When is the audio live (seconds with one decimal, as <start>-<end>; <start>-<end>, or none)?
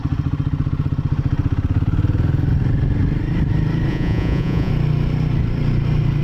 0.0-3.9; 4.7-6.2